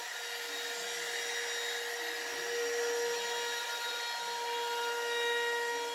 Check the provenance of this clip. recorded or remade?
recorded